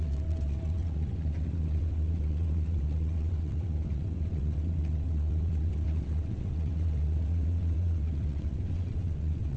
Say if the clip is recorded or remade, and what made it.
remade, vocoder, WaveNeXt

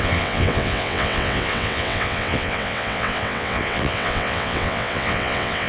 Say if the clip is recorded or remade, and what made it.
remade, vocoder, WaveNeXt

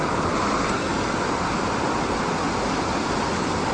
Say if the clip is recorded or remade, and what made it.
recorded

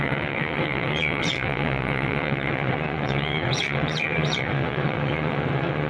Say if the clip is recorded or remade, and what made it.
remade, vocoder, WaveNeXt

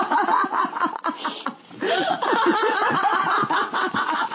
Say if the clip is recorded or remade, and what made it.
remade, vocoder, WaveNeXt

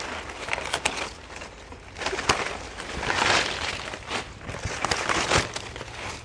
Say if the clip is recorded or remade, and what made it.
recorded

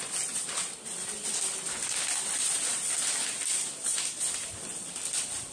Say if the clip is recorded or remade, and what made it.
recorded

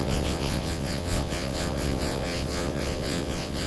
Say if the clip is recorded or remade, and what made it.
remade, vocoder, WaveNeXt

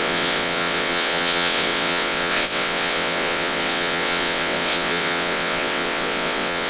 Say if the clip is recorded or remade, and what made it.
remade, vocoder, WaveNeXt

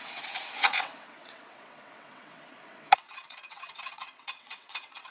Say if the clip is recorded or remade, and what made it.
remade, vocoder, WaveNeXt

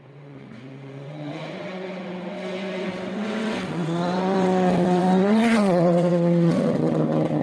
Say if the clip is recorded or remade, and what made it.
remade, vocoder, WaveNeXt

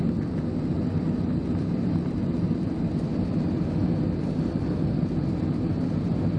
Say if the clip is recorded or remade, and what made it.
recorded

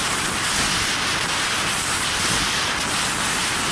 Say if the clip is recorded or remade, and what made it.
recorded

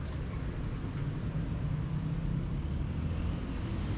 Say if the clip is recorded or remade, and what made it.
recorded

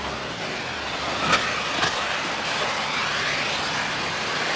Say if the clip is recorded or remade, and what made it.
recorded